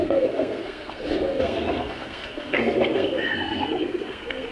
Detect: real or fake fake